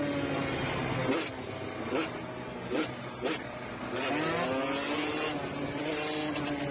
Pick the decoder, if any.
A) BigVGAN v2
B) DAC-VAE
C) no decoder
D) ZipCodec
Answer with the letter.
C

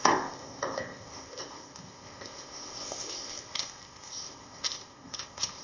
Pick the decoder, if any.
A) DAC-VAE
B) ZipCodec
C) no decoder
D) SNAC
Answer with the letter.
B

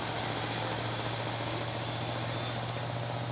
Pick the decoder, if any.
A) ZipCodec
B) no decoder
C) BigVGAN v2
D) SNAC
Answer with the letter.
B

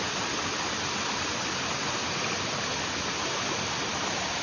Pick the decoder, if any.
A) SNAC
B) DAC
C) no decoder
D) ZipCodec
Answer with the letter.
C